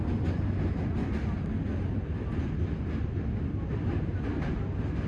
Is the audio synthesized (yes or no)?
no